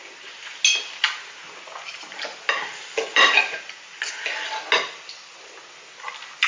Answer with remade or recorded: recorded